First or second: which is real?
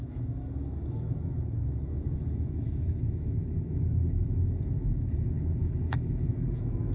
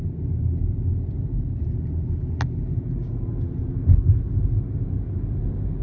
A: second